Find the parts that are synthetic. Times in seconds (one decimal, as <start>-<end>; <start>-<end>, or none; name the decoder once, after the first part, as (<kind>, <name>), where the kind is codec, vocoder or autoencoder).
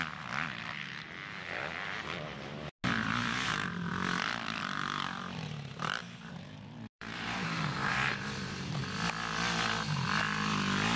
3.2-3.9 (vocoder, BigVGAN v2); 6.0-8.8